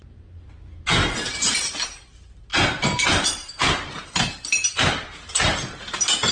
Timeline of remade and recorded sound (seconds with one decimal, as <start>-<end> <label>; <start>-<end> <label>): 0.0-6.3 recorded